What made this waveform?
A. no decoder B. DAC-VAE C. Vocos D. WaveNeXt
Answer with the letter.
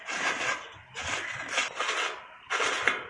A